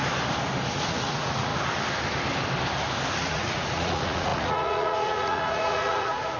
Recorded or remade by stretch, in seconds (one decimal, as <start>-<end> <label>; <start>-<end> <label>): 0.0-0.7 recorded; 0.7-1.5 remade; 1.5-3.2 recorded; 3.2-6.4 remade